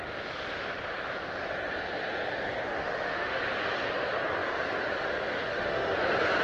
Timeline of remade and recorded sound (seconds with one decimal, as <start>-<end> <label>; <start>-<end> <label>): 0.0-2.7 recorded; 2.7-3.4 remade; 3.4-5.5 recorded; 5.5-6.0 remade; 6.0-6.4 recorded